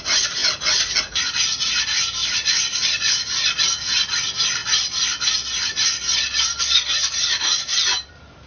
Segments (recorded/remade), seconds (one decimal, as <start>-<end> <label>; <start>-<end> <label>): 0.0-0.4 recorded; 0.4-0.9 remade; 0.9-2.2 recorded; 2.2-3.6 remade; 3.6-4.6 recorded; 4.6-8.1 remade; 8.1-8.5 recorded